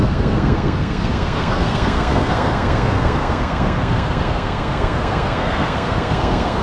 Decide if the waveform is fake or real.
fake